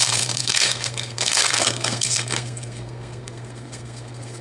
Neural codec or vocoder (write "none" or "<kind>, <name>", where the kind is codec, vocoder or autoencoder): codec, SNAC